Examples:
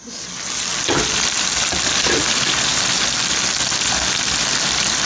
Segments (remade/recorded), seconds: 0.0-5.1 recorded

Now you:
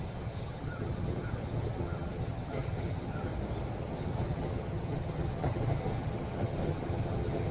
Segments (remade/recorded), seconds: 0.0-3.3 remade; 3.3-3.8 recorded; 3.8-7.5 remade

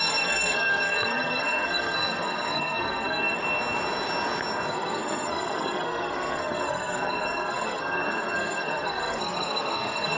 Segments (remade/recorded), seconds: 0.0-3.4 remade; 3.4-4.7 recorded; 4.7-10.2 remade

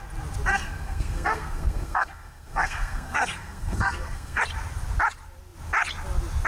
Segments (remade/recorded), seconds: 0.0-0.5 recorded; 0.5-4.4 remade; 4.4-6.5 recorded

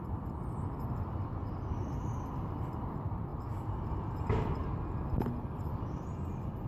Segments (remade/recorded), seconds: 0.0-6.7 recorded

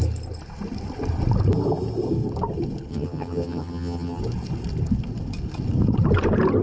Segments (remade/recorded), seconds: 0.0-2.9 recorded; 2.9-4.2 remade; 4.2-6.6 recorded

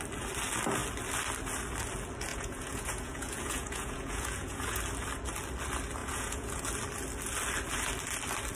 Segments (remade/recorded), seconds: 0.0-2.3 recorded; 2.3-4.8 remade; 4.8-6.0 recorded; 6.0-6.6 remade; 6.6-8.5 recorded

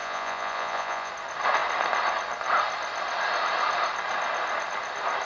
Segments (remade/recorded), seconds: 0.0-1.1 remade; 1.1-5.2 recorded